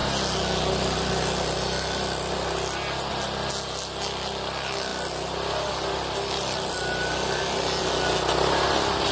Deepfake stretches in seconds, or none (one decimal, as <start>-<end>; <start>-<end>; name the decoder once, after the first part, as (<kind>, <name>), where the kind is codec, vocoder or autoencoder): none